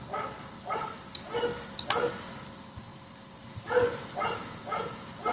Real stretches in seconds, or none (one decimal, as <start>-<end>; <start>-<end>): 0.0-5.3